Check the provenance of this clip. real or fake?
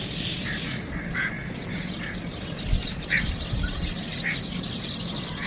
real